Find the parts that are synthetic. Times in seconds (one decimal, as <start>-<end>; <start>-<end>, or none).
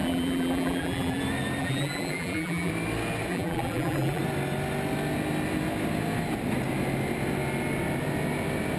0.0-1.2; 1.6-2.7; 3.3-4.2